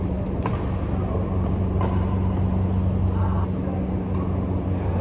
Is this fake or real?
real